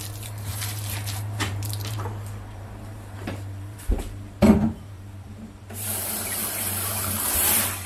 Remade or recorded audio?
remade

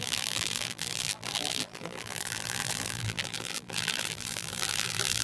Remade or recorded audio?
remade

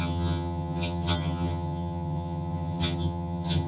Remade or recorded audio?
remade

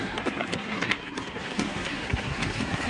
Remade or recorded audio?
remade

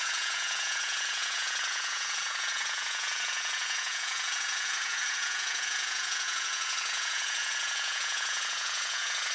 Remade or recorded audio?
remade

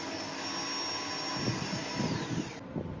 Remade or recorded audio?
recorded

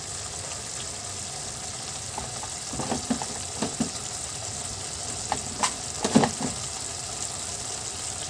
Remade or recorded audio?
recorded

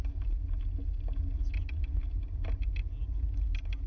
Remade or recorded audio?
recorded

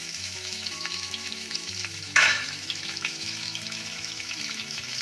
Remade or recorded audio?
remade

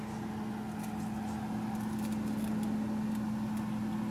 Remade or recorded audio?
recorded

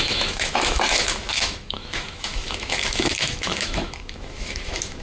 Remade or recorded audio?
remade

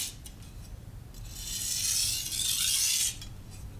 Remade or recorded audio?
recorded